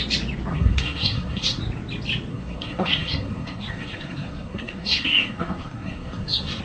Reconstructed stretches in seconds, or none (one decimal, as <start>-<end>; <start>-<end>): 0.5-1.6; 2.3-6.6